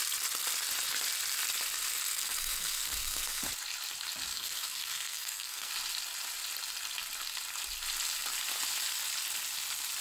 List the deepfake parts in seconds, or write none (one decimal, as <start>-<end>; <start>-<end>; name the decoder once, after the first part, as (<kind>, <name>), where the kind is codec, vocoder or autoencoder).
2.1-3.5 (codec, SNAC); 4.3-5.7